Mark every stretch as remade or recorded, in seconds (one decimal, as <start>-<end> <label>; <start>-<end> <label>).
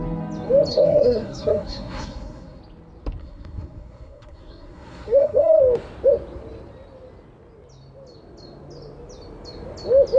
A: 0.0-0.7 recorded; 0.7-2.6 remade; 2.6-3.2 recorded; 3.2-5.6 remade; 5.6-10.2 recorded